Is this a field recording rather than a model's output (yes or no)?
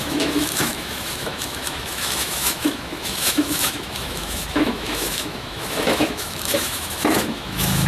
no